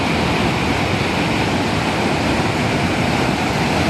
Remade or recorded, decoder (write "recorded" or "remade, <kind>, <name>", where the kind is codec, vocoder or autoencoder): remade, vocoder, BigVGAN v2